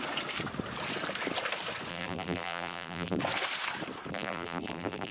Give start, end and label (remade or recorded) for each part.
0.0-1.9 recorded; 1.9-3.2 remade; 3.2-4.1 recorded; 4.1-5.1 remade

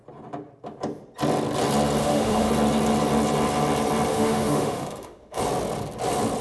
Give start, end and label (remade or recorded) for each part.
0.0-2.0 recorded; 2.0-2.5 remade; 2.5-4.1 recorded; 4.1-5.4 remade; 5.4-6.4 recorded

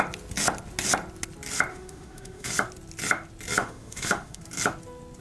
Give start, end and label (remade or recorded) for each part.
0.0-1.7 recorded; 1.7-2.5 remade; 2.5-3.6 recorded; 3.6-4.4 remade; 4.4-5.2 recorded

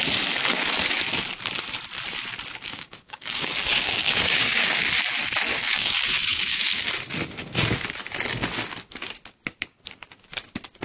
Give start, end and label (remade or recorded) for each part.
0.0-2.7 recorded; 2.7-4.8 remade; 4.8-5.5 recorded; 5.5-6.9 remade; 6.9-10.8 recorded

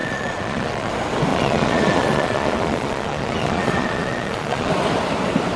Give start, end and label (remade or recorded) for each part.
0.0-0.9 remade; 0.9-1.3 recorded; 1.3-4.7 remade; 4.7-5.6 recorded